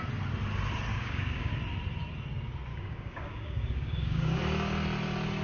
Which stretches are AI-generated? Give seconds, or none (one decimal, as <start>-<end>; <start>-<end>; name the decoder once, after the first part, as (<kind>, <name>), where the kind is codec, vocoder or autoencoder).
0.9-1.5 (codec, DAC); 2.7-4.4